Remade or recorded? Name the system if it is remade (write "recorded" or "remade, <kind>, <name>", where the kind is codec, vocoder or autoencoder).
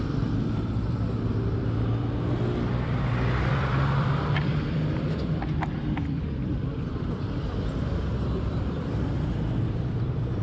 remade, vocoder, BigVGAN v2